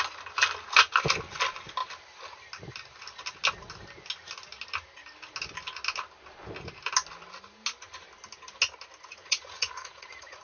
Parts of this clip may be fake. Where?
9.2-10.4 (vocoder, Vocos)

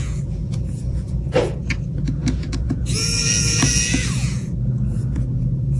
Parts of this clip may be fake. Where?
0.0-5.8 (vocoder, Vocos)

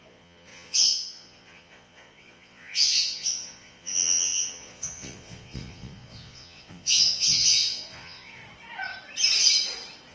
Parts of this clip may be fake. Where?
0.0-8.4 (vocoder, Vocos)